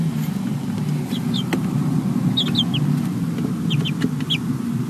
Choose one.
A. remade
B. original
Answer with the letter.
B